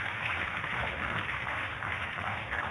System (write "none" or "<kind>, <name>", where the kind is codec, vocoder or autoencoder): autoencoder, DAC-VAE